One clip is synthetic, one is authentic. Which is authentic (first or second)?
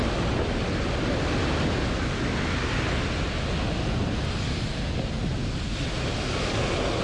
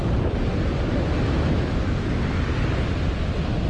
first